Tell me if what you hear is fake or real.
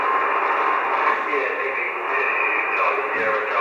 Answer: real